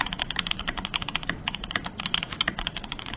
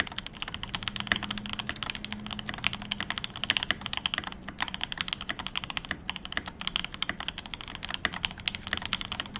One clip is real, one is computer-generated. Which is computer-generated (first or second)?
first